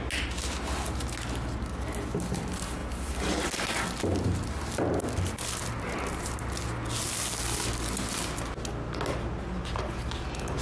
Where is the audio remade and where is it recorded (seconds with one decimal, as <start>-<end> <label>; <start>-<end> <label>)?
0.0-10.6 recorded